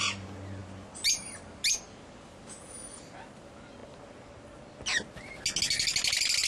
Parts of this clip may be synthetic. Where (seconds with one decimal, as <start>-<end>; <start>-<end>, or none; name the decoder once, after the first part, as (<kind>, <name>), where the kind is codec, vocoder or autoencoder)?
none